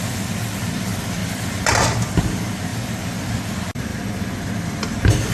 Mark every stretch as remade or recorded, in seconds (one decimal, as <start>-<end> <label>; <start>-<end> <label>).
0.0-1.2 remade; 1.2-1.7 recorded; 1.7-2.7 remade; 2.7-3.4 recorded; 3.4-3.9 remade; 3.9-4.6 recorded; 4.6-5.3 remade